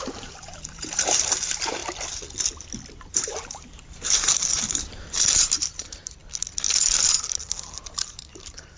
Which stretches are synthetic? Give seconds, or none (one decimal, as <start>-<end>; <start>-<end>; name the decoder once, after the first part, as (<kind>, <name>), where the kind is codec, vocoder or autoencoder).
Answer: 0.0-1.8 (vocoder, BigVGAN v2); 3.1-6.2; 7.4-8.8